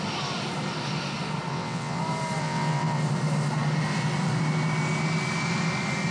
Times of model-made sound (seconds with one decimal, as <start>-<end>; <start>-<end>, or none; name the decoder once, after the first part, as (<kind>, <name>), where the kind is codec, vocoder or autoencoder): 1.5-2.0 (vocoder, WaveNeXt); 2.4-3.0